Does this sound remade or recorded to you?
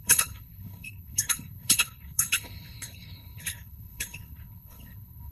remade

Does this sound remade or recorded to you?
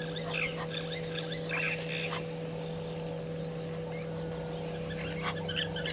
recorded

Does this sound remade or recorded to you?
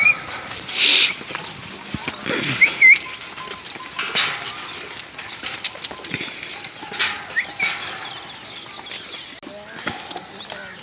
recorded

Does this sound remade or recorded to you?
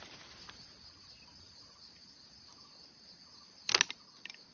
recorded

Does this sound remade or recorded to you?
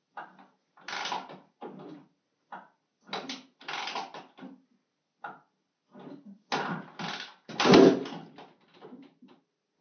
recorded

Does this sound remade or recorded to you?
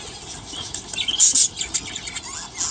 recorded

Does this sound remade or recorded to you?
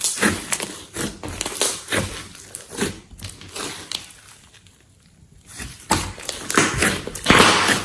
recorded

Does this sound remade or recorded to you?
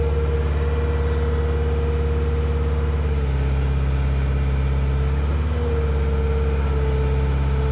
recorded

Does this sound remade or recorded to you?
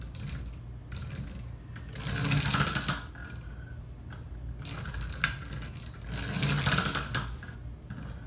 recorded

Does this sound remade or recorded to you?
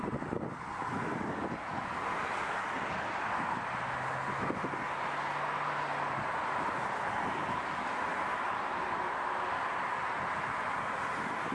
recorded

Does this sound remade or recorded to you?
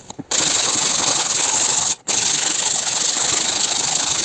remade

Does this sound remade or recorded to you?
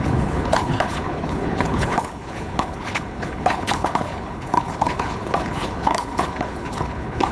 remade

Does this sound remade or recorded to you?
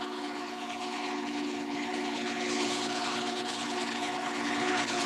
remade